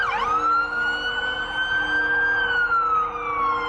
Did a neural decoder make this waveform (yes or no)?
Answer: no